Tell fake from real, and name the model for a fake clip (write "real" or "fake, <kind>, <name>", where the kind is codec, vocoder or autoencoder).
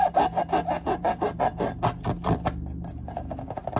real